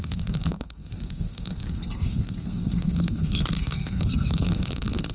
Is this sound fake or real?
fake